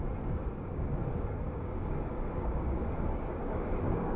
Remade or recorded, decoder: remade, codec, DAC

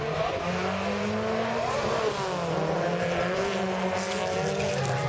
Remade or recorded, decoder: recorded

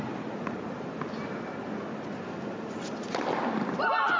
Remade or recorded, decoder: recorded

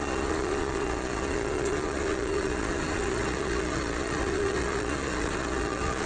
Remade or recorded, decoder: remade, vocoder, Vocos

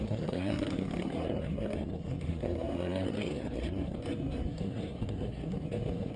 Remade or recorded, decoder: remade, codec, SNAC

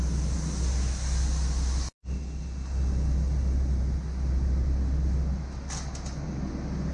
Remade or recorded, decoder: recorded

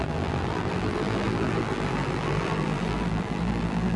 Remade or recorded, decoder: remade, vocoder, BigVGAN v2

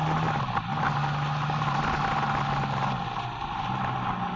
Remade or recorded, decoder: recorded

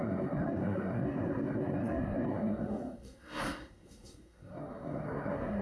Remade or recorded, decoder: remade, codec, SNAC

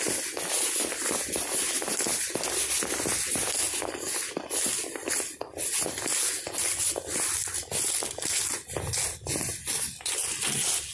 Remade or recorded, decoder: recorded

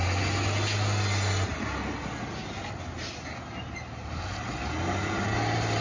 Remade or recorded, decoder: recorded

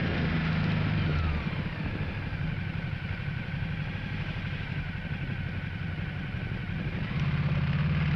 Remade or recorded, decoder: recorded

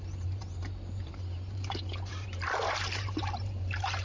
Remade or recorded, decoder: remade, vocoder, BigVGAN v2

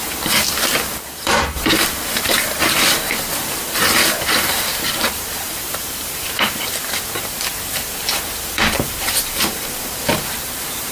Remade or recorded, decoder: remade, vocoder, BigVGAN v2